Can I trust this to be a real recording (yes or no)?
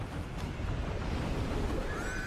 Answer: yes